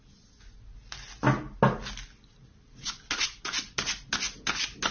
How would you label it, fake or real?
real